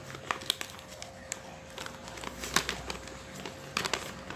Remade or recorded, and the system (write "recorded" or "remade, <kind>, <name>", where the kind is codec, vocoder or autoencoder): recorded